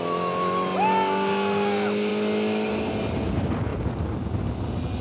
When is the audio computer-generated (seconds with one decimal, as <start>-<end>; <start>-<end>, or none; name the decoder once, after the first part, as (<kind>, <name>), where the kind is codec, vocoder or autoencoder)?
none